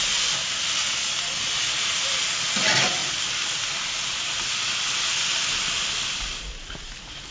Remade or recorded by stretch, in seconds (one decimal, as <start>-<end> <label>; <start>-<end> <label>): 0.0-7.3 recorded